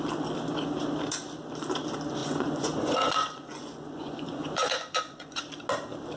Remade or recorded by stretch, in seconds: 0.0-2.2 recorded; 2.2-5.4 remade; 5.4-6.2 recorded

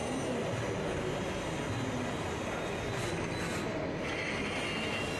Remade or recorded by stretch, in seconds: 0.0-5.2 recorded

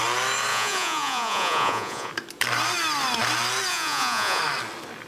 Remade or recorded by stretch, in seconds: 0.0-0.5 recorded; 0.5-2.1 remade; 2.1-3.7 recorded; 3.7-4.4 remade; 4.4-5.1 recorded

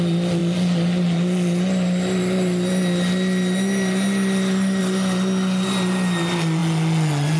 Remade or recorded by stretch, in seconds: 0.0-7.4 recorded